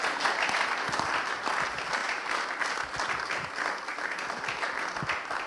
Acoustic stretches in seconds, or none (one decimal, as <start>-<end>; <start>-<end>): 0.0-5.5